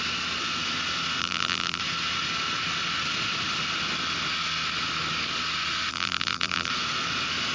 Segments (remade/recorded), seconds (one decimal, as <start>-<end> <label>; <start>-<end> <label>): 0.0-1.2 recorded; 1.2-1.8 remade; 1.8-5.9 recorded; 5.9-6.7 remade; 6.7-7.5 recorded